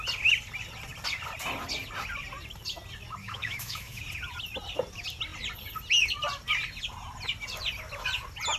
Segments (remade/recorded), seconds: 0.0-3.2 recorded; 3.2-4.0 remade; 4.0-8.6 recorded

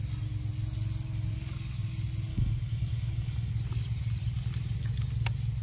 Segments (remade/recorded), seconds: 0.0-2.3 recorded; 2.3-3.5 remade; 3.5-5.6 recorded